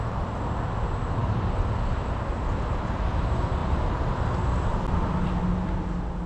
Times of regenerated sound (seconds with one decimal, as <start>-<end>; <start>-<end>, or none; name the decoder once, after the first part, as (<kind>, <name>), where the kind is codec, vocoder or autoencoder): none